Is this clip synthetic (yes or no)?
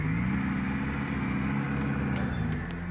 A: no